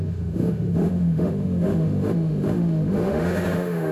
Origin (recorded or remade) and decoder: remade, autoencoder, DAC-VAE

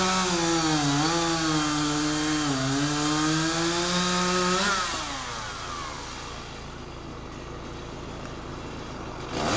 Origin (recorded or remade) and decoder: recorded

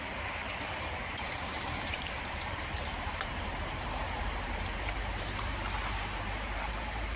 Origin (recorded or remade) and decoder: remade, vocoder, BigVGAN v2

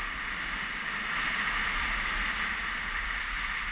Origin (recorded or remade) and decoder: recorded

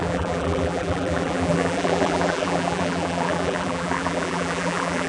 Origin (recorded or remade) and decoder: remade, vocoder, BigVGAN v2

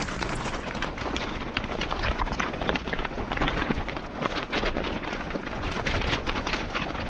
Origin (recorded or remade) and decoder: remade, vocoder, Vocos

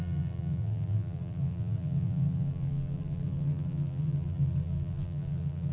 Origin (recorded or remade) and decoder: remade, vocoder, BigVGAN v2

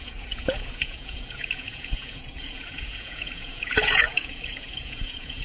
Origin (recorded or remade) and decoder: remade, vocoder, Vocos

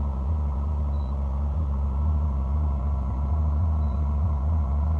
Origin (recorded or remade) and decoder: remade, vocoder, Vocos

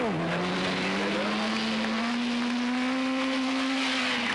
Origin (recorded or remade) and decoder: recorded